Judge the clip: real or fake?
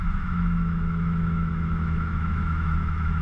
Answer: fake